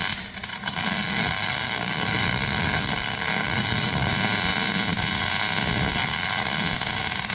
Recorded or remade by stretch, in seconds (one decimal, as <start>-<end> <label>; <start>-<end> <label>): 0.0-0.5 recorded; 0.5-4.1 remade; 4.1-6.0 recorded; 6.0-6.6 remade; 6.6-7.3 recorded